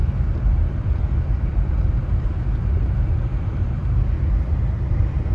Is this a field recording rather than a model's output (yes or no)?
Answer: no